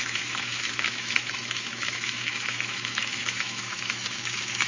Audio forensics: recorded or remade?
remade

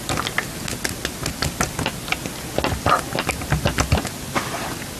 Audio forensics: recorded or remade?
recorded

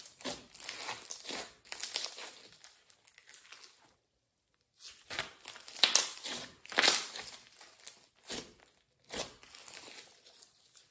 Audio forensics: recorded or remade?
recorded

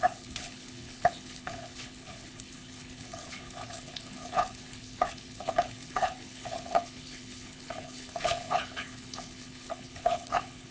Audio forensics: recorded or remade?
remade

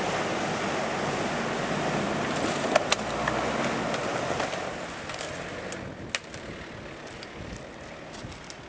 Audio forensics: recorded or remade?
recorded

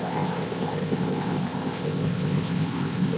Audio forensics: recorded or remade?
remade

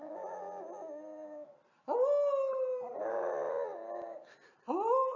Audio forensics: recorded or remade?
recorded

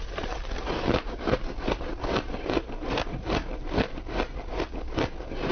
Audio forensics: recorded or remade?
recorded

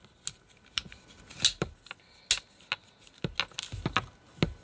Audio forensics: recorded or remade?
recorded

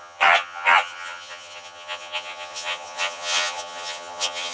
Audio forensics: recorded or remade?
remade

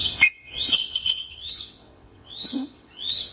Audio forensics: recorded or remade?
remade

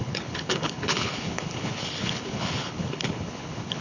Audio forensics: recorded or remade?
remade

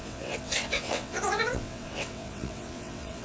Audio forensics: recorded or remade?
remade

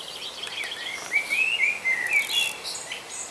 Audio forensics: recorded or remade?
recorded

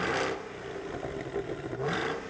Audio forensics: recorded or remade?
recorded